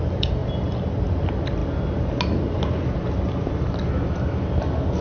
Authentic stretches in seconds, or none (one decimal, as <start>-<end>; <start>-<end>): 0.0-5.0